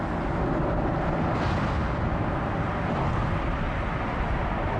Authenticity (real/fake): real